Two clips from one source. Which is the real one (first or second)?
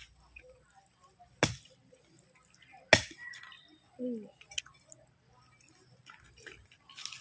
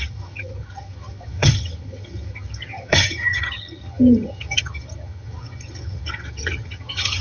first